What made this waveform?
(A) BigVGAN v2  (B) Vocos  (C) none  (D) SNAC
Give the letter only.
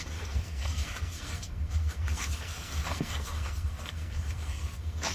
D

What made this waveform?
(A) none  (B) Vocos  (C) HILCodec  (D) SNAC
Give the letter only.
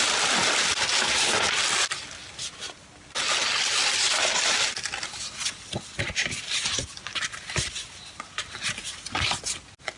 A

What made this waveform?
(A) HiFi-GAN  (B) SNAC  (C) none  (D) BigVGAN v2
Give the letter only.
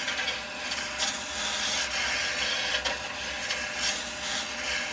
C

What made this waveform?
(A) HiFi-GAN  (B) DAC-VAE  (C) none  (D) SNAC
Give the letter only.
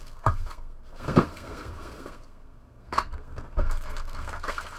D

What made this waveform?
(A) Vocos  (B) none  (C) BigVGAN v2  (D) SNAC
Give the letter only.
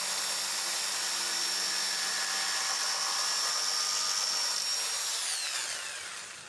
B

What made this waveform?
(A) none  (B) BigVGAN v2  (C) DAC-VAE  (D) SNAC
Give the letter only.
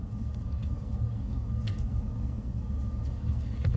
D